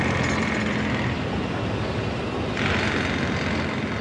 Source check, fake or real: real